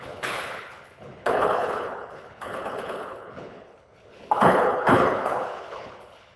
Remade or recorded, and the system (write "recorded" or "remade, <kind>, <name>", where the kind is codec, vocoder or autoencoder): remade, codec, HILCodec